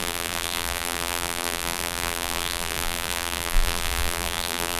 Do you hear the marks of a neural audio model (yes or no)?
yes